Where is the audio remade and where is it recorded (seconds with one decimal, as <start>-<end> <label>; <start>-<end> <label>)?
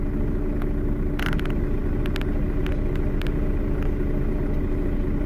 0.0-5.3 recorded